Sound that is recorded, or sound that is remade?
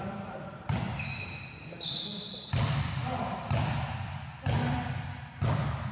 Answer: recorded